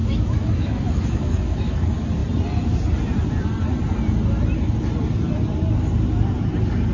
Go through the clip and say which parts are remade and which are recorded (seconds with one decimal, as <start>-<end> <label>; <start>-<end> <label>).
0.0-1.7 remade; 1.7-6.9 recorded